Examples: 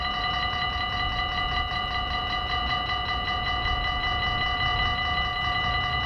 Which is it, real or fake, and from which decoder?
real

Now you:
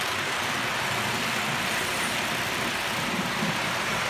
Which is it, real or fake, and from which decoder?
real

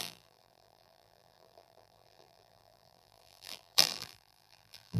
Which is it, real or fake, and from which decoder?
fake, vocoder, BigVGAN v2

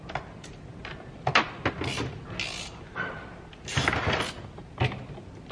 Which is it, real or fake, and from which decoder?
real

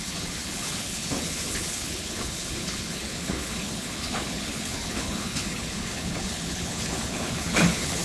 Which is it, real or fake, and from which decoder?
fake, codec, HILCodec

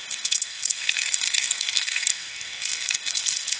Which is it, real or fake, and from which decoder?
fake, codec, SNAC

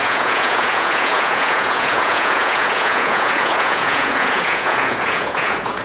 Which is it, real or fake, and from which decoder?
fake, vocoder, Vocos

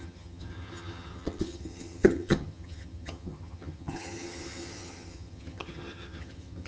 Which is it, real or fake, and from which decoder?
fake, vocoder, HiFi-GAN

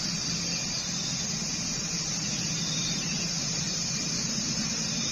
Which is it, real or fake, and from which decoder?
real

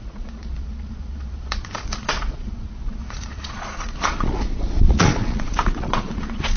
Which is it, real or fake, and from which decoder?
fake, vocoder, Vocos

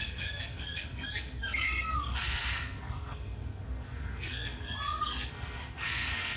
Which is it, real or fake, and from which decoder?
fake, codec, SNAC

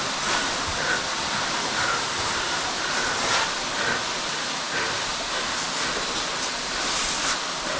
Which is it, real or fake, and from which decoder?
real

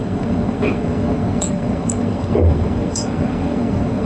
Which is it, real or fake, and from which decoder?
fake, codec, SNAC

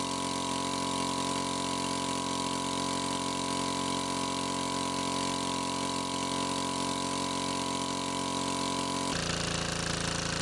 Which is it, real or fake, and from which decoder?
real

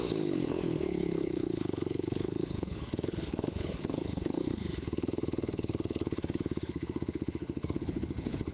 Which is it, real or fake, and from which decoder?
fake, codec, HILCodec